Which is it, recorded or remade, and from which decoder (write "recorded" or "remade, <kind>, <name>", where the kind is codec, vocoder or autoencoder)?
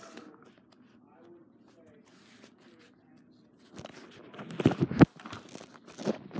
recorded